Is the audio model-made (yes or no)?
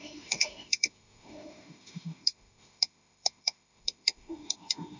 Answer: yes